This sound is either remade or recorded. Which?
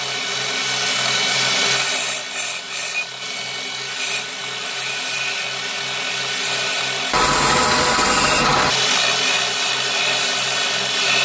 recorded